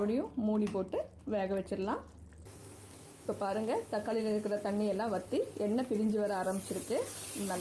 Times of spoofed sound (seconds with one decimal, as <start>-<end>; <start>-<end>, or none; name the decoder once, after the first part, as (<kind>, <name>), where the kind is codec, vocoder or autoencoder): 0.6-1.2 (autoencoder, DAC-VAE); 2.6-4.7